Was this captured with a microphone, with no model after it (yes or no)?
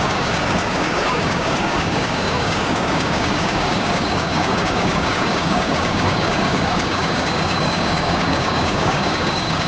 no